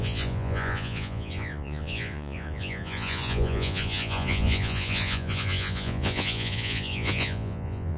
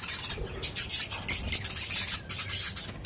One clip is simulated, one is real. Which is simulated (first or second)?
first